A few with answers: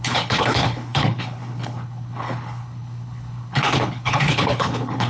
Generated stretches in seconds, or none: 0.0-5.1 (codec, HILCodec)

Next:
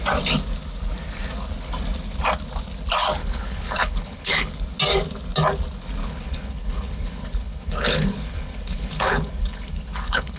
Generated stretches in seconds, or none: 3.2-4.5 (codec, HILCodec); 6.0-10.4

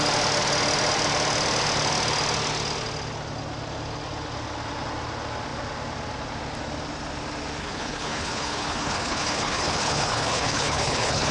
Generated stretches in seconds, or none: 7.6-11.3 (codec, HILCodec)

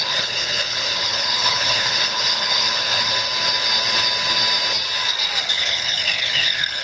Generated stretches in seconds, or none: 0.0-3.1 (codec, HILCodec); 5.4-6.8

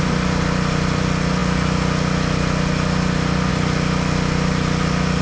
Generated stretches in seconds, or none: none

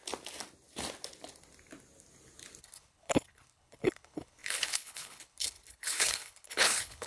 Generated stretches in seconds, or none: 2.6-7.1 (codec, HILCodec)

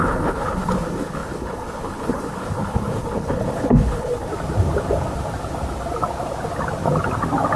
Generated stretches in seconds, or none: 0.0-4.3 (codec, HILCodec)